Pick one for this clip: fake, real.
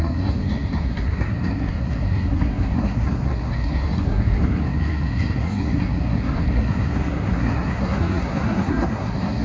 fake